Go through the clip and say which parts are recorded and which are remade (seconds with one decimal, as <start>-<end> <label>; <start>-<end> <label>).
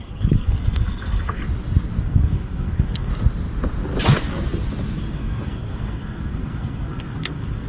0.0-1.4 remade; 1.4-2.0 recorded; 2.0-3.1 remade; 3.1-5.1 recorded; 5.1-7.7 remade